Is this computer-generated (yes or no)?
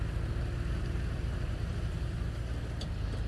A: no